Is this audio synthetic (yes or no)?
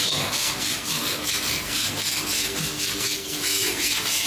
yes